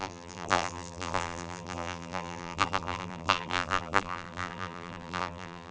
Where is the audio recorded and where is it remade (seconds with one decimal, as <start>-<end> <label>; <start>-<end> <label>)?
0.0-5.7 remade